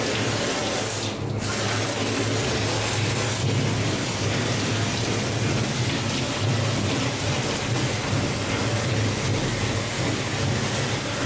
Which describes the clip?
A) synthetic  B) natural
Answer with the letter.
B